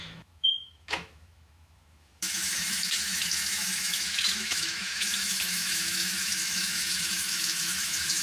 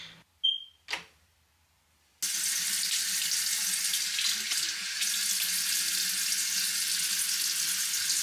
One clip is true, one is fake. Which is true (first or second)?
second